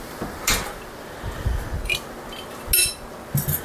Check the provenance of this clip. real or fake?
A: real